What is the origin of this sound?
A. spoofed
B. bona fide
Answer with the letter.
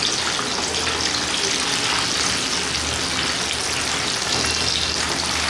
B